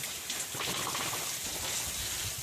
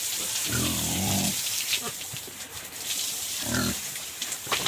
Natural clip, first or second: first